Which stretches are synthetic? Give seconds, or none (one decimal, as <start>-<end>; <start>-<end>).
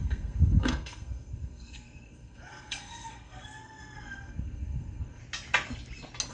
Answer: 0.0-5.2